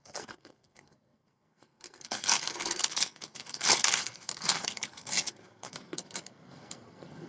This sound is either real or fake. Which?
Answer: fake